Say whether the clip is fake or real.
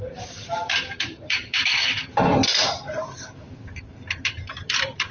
fake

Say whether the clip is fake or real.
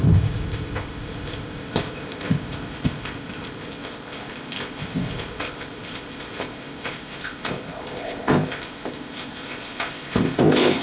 fake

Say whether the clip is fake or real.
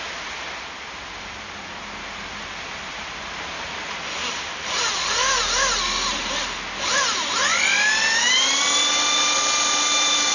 real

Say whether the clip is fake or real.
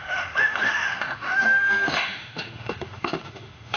fake